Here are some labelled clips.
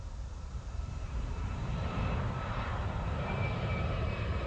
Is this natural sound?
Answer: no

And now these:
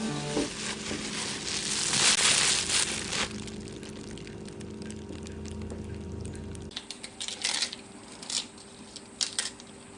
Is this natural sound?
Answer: yes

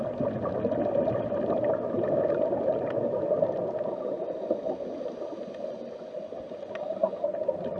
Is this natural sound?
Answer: yes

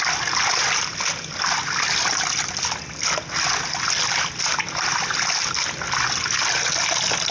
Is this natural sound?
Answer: yes